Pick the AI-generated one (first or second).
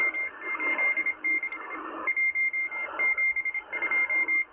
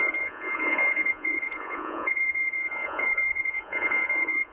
second